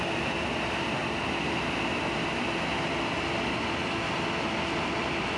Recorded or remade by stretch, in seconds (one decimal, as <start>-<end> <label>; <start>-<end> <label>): 0.0-5.4 recorded